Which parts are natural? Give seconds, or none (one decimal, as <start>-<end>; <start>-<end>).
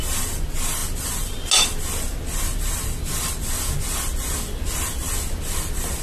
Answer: 0.0-6.0